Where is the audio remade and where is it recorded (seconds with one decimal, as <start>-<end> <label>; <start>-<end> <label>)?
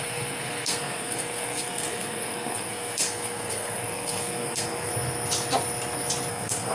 0.0-4.9 remade; 4.9-6.3 recorded; 6.3-6.7 remade